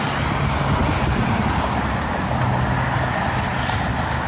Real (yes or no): yes